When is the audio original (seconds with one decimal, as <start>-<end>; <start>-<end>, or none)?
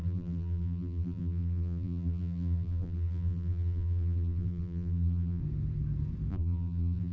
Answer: 5.4-6.3